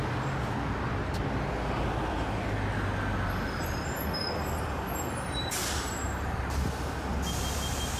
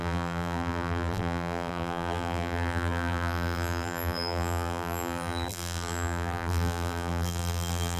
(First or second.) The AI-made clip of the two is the second